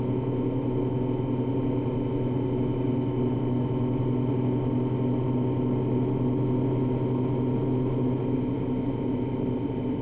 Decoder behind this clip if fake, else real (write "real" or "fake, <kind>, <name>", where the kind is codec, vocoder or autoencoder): real